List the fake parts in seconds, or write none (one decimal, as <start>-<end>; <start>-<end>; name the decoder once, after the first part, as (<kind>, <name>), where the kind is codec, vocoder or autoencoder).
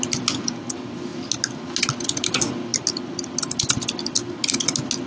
none